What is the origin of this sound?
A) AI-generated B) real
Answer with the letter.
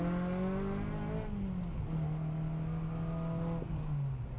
B